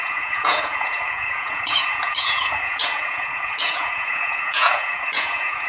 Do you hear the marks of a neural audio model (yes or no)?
yes